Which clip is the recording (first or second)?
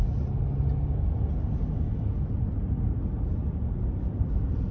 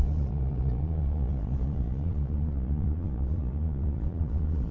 first